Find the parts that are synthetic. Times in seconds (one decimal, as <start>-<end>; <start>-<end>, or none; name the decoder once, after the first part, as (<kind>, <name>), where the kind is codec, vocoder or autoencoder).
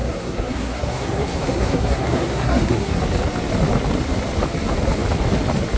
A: 0.0-3.0 (codec, SNAC)